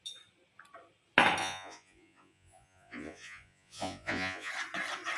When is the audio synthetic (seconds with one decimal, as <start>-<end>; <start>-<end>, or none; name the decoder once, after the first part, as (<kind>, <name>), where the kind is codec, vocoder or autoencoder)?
1.4-4.5 (vocoder, Vocos)